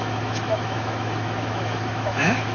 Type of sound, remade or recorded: remade